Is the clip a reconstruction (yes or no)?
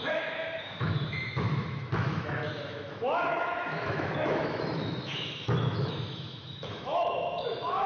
yes